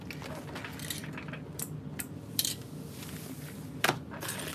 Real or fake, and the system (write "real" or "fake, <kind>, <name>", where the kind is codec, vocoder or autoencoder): real